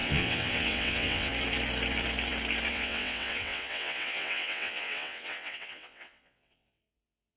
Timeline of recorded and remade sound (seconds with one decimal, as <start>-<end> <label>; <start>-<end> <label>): 0.0-1.3 remade; 1.3-2.7 recorded; 2.7-7.4 remade